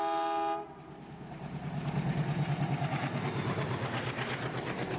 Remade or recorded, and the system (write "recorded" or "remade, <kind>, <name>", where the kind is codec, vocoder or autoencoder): recorded